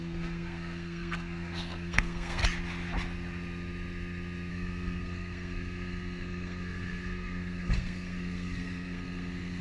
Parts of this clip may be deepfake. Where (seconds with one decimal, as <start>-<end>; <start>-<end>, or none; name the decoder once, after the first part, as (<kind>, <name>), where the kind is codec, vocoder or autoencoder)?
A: 0.0-2.4 (codec, SNAC); 4.5-9.6